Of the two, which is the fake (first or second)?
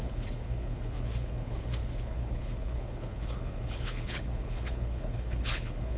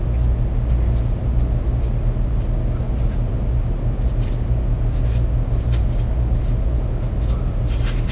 first